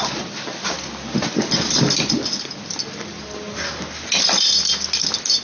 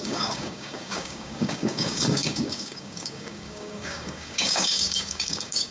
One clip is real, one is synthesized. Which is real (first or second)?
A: first